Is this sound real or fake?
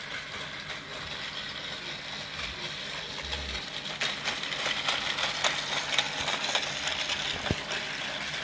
real